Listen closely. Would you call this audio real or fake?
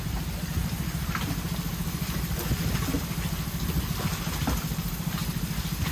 real